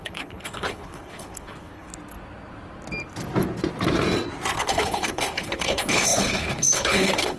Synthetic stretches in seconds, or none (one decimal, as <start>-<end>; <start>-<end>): 0.0-1.9; 4.6-7.4